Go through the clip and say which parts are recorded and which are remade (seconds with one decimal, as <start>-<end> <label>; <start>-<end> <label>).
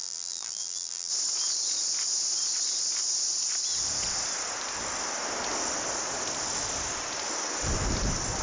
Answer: 0.0-1.1 remade; 1.1-8.4 recorded